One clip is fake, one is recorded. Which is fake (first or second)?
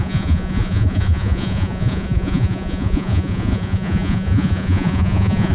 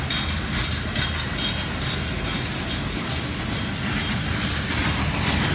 first